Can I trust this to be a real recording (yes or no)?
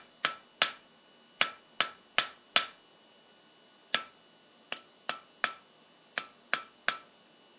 yes